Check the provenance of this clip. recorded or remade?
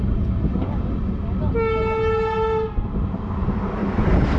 recorded